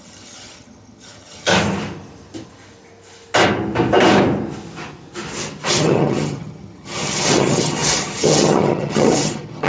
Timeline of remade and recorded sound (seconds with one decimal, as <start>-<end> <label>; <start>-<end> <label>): 0.0-1.5 remade; 1.5-5.7 recorded; 5.7-9.7 remade